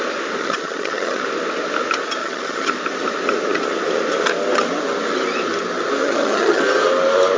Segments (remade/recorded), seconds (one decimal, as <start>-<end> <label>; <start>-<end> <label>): 0.0-0.4 recorded; 0.4-1.2 remade; 1.2-2.2 recorded; 2.2-2.7 remade; 2.7-6.0 recorded; 6.0-6.6 remade; 6.6-7.4 recorded